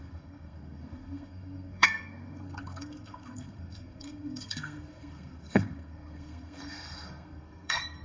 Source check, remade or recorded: remade